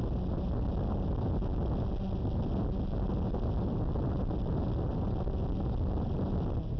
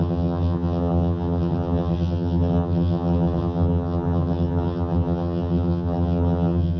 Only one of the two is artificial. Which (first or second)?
second